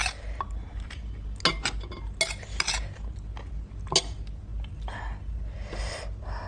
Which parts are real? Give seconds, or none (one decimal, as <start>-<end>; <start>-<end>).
0.0-6.5